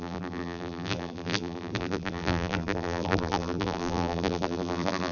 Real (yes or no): no